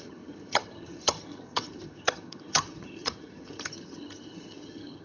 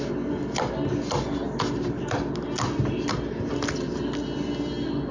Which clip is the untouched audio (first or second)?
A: second